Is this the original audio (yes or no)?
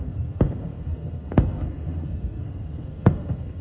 no